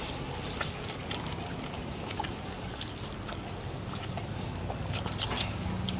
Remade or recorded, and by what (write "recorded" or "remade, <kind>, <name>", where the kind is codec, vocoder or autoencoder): recorded